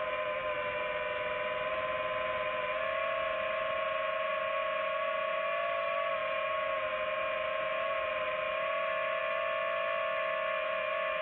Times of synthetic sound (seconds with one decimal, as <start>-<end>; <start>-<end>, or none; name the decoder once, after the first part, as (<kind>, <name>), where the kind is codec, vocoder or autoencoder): none